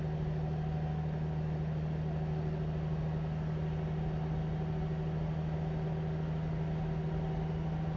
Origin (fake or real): real